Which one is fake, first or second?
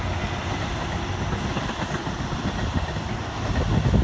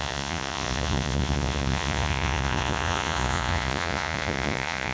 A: second